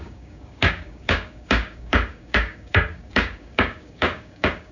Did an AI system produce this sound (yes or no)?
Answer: yes